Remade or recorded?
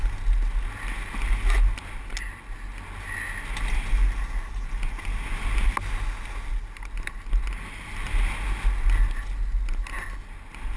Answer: recorded